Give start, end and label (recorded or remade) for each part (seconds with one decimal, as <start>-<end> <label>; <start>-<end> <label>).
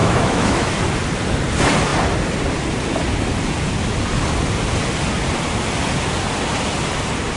0.0-0.7 remade; 0.7-7.4 recorded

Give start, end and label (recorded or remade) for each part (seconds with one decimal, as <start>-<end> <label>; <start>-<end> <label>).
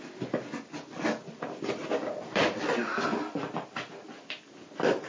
0.0-5.1 recorded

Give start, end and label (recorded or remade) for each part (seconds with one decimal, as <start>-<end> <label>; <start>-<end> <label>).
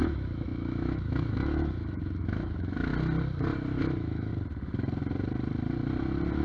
0.0-2.9 remade; 2.9-3.8 recorded; 3.8-4.3 remade; 4.3-6.4 recorded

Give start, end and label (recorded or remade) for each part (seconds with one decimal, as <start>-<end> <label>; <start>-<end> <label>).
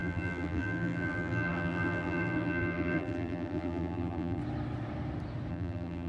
0.0-4.4 remade; 4.4-5.5 recorded; 5.5-6.1 remade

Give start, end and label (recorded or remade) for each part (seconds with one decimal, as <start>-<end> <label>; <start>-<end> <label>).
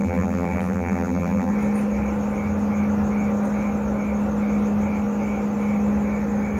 0.0-1.5 remade; 1.5-6.6 recorded